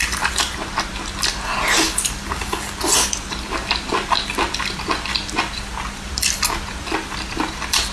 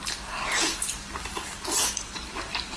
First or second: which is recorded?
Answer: first